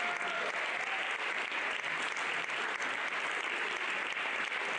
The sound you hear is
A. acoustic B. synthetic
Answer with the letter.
A